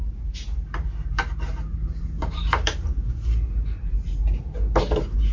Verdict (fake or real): fake